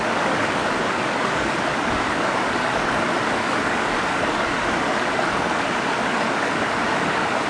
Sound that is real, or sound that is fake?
fake